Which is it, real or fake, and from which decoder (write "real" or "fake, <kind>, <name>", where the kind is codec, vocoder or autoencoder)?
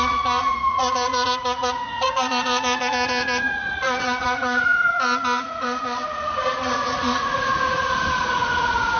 fake, vocoder, Vocos